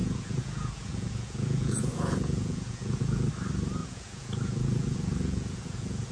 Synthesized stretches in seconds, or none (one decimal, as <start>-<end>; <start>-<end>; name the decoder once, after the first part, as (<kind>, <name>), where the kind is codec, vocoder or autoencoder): 0.0-3.3 (vocoder, Vocos); 3.8-6.1